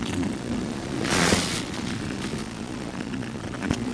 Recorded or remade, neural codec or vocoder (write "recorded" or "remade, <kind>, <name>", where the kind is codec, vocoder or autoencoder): remade, vocoder, Vocos